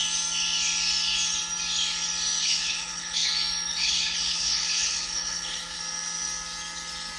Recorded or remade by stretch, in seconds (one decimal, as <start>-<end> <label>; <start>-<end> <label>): 0.0-2.4 recorded; 2.4-3.3 remade; 3.3-3.7 recorded; 3.7-5.8 remade; 5.8-7.2 recorded

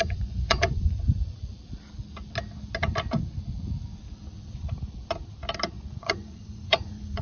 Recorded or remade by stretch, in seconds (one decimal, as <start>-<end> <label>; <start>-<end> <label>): 0.0-1.4 remade; 1.4-5.7 recorded; 5.7-7.2 remade

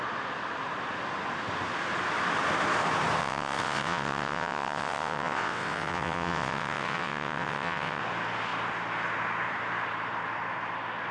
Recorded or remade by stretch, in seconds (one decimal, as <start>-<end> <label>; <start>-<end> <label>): 0.0-3.2 recorded; 3.2-8.0 remade; 8.0-11.1 recorded

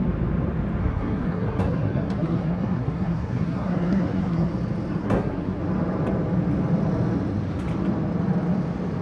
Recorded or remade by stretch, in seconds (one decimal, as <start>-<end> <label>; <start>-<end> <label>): 0.0-0.8 recorded; 0.8-4.5 remade; 4.5-5.0 recorded; 5.0-5.6 remade; 5.6-9.0 recorded

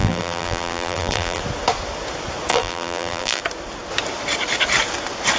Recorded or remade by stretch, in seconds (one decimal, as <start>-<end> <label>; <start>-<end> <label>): 0.0-1.4 remade; 1.4-2.5 recorded; 2.5-3.4 remade; 3.4-5.4 recorded

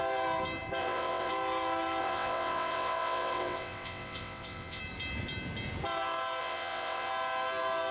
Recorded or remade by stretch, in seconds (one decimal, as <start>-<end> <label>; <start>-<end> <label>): 0.0-0.8 recorded; 0.8-1.3 remade; 1.3-2.0 recorded; 2.0-4.8 remade; 4.8-6.4 recorded; 6.4-7.1 remade; 7.1-7.9 recorded

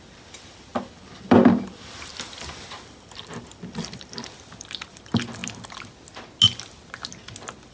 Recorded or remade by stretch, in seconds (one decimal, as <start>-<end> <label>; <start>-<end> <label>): 0.0-5.4 remade; 5.4-7.7 recorded

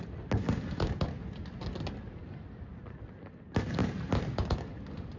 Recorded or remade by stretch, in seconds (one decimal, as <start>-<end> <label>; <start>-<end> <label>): 0.0-5.2 recorded